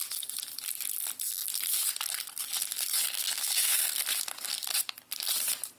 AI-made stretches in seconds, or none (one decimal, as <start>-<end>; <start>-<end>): 3.2-4.0